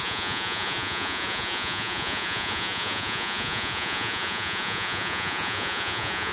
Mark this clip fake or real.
fake